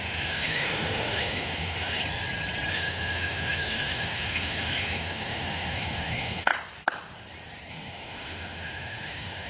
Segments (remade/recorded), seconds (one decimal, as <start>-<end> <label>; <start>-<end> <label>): 0.0-2.0 remade; 2.0-2.7 recorded; 2.7-6.5 remade; 6.5-7.7 recorded; 7.7-9.5 remade

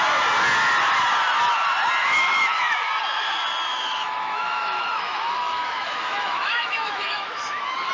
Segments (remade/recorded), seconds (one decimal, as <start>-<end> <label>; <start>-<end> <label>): 0.0-2.0 recorded; 2.0-2.9 remade; 2.9-3.7 recorded; 3.7-7.9 remade

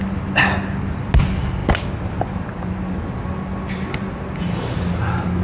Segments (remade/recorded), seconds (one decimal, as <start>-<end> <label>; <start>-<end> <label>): 0.0-5.4 recorded

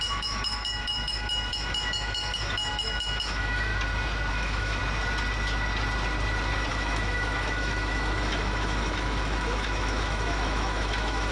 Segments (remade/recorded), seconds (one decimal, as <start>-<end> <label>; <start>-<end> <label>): 0.0-3.7 remade; 3.7-4.3 recorded; 4.3-4.8 remade; 4.8-6.7 recorded; 6.7-11.3 remade

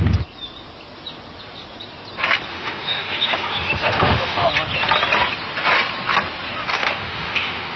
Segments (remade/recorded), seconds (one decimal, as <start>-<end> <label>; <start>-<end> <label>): 0.0-2.5 recorded; 2.5-4.5 remade; 4.5-6.7 recorded; 6.7-7.8 remade

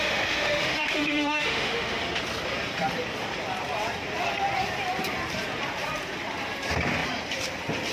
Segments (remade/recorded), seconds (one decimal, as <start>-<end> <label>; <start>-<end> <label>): 0.0-2.0 remade; 2.0-7.9 recorded